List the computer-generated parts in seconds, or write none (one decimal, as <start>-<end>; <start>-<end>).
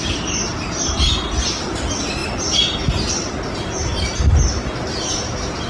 none